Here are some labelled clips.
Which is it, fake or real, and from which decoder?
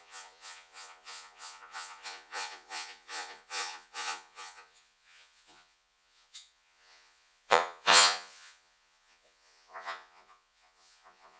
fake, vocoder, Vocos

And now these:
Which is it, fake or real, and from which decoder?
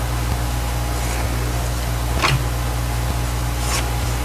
real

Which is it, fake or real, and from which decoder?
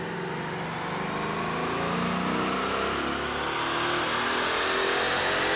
real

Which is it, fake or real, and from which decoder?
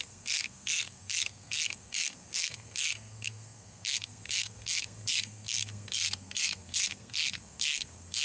fake, codec, SNAC